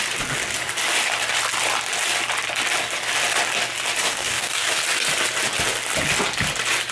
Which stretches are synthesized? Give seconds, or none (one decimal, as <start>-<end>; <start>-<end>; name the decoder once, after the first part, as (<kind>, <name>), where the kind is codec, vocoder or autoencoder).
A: 4.1-4.7 (codec, DAC)